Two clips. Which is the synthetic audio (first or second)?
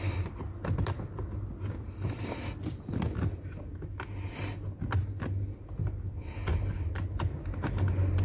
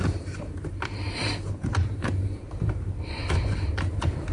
second